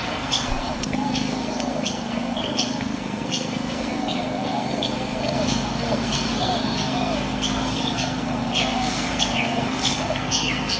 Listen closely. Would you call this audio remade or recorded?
remade